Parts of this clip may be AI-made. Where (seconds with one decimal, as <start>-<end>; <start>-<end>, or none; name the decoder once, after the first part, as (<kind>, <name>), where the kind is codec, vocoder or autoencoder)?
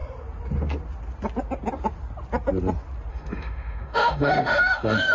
3.1-5.1 (autoencoder, DAC-VAE)